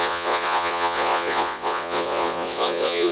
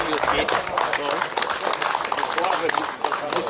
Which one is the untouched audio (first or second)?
second